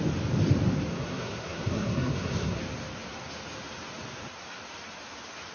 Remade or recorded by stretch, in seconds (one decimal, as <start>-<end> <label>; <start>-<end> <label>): 0.0-0.9 recorded; 0.9-2.6 remade; 2.6-5.5 recorded